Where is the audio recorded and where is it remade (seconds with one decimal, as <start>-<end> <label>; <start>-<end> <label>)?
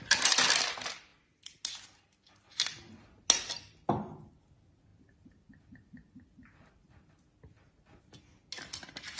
0.0-9.2 recorded